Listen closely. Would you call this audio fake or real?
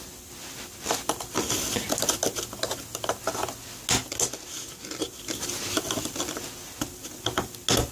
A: real